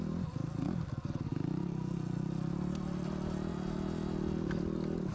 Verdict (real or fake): real